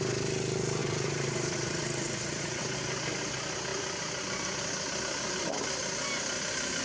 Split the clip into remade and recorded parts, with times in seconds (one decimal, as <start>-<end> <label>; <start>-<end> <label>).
0.0-0.8 recorded; 0.8-2.6 remade; 2.6-6.8 recorded